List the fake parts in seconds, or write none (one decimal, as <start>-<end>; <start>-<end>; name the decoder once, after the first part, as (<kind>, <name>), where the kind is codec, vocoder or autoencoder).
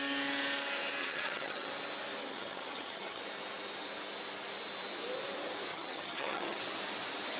1.0-1.7 (vocoder, HiFi-GAN); 2.2-3.2; 5.7-6.6